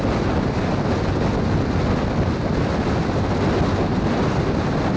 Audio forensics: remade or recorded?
recorded